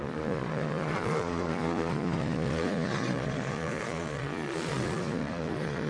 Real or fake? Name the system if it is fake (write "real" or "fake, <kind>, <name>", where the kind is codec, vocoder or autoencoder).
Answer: fake, vocoder, Vocos